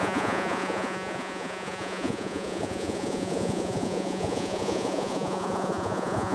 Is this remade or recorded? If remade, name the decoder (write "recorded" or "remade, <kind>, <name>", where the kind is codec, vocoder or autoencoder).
remade, vocoder, Vocos